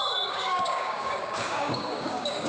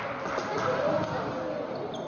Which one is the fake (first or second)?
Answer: first